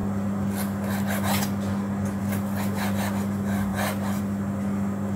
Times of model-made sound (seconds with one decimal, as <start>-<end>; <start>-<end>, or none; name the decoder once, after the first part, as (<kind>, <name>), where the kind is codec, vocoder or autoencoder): none